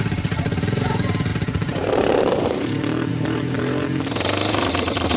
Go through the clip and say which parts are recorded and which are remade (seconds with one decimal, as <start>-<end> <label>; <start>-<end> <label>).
0.0-5.2 remade